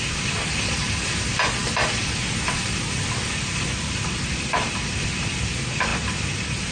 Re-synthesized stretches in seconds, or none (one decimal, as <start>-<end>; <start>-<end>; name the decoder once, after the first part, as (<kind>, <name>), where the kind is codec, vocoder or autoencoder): none